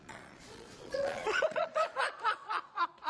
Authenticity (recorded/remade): remade